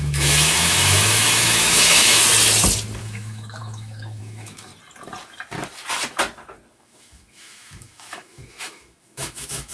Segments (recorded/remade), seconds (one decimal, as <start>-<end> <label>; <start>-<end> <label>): 0.0-2.2 remade; 2.2-3.0 recorded; 3.0-4.7 remade; 4.7-6.7 recorded; 6.7-9.7 remade